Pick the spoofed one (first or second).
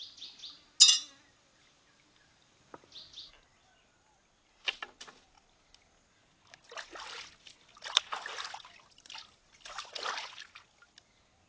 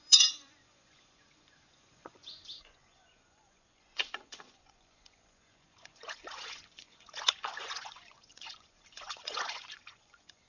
second